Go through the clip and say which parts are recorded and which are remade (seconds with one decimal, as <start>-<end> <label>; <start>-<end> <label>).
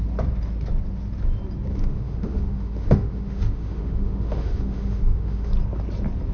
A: 0.0-1.7 recorded; 1.7-5.5 remade; 5.5-6.3 recorded